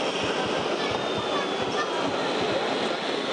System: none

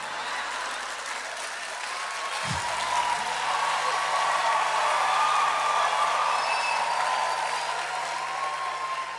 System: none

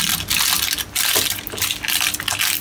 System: none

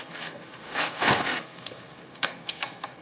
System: codec, SNAC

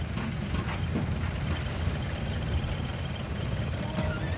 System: none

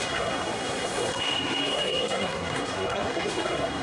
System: codec, SNAC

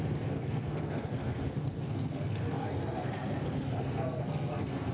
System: codec, SNAC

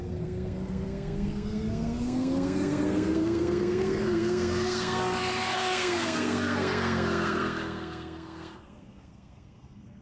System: codec, SNAC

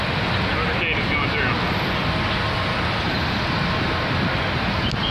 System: none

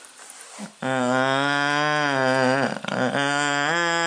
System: none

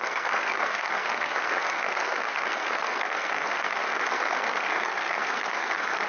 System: codec, SNAC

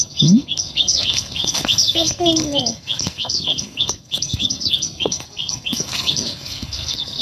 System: codec, SNAC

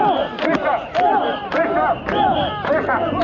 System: none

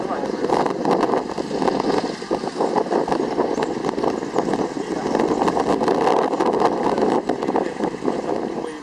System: none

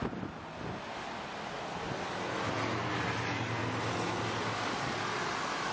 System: none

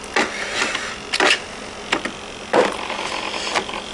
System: none